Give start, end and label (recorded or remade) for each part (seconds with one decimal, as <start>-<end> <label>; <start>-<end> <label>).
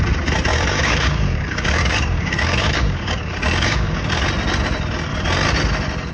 0.0-0.5 recorded; 0.5-4.2 remade; 4.2-6.1 recorded